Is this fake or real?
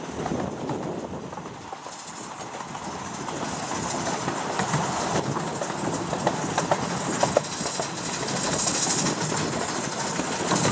real